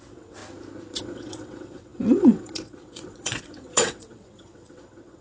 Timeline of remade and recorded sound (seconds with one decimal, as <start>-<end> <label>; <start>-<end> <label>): 0.0-0.4 remade; 0.4-1.0 recorded; 1.0-5.2 remade